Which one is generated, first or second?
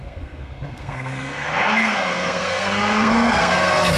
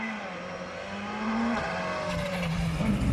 first